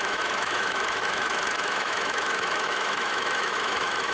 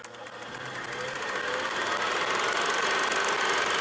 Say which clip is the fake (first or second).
first